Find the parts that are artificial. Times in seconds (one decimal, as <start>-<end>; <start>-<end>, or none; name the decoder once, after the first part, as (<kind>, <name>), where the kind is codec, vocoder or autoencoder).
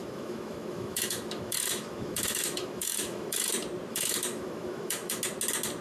0.0-3.5 (autoencoder, DAC-VAE); 3.9-5.2